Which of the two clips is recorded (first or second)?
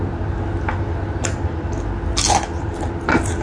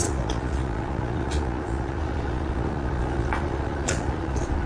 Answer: first